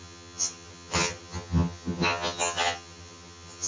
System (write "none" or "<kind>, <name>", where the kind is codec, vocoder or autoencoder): vocoder, HiFi-GAN